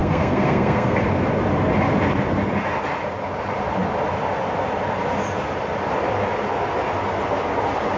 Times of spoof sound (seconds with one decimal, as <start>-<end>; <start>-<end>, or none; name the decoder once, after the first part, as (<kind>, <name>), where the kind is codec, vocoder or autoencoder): 0.0-1.0 (codec, SNAC)